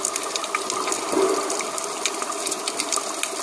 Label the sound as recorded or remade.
recorded